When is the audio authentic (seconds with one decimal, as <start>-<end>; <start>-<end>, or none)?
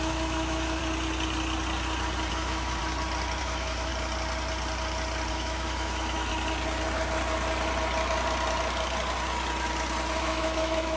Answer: 0.8-2.3; 2.8-3.4; 3.9-5.3; 6.3-10.2